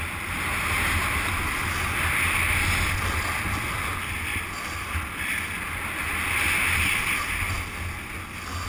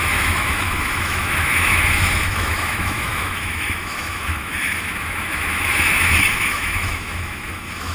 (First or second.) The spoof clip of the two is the second